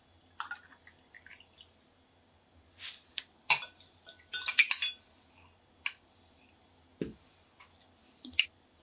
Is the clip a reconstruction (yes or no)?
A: no